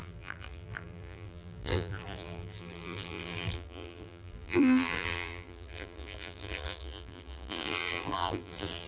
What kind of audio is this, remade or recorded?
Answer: remade